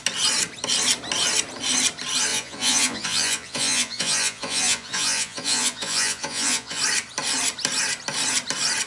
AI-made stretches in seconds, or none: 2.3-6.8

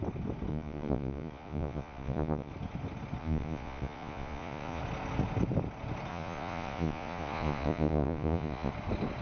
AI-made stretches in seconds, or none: 0.5-2.5; 3.2-4.8; 6.1-8.7

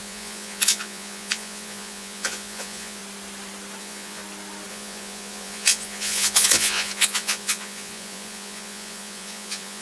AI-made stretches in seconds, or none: 0.0-3.0; 3.8-4.2; 4.7-9.8

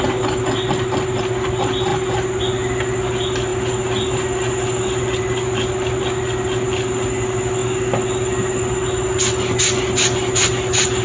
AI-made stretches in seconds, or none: none

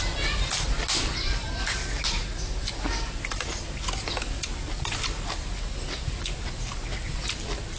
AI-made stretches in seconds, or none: none

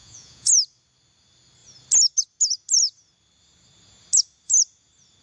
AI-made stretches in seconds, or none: 0.0-0.5

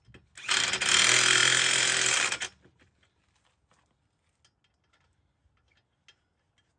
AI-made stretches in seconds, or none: none

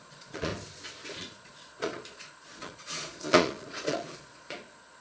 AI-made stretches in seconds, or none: 0.0-0.5; 1.1-5.0